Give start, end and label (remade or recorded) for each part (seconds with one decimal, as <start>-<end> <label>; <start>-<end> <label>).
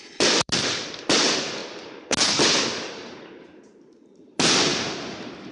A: 0.0-1.6 remade; 1.6-3.4 recorded; 3.4-4.7 remade; 4.7-5.5 recorded